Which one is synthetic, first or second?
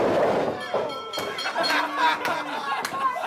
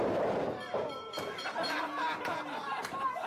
second